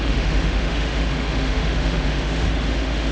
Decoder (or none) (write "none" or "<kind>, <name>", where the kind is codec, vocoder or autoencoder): autoencoder, DAC-VAE